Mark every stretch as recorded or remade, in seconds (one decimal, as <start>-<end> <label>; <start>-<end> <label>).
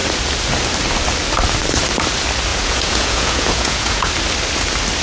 0.0-2.5 recorded; 2.5-4.1 remade; 4.1-5.0 recorded